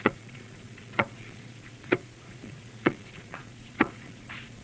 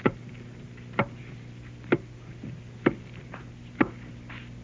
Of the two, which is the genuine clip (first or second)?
second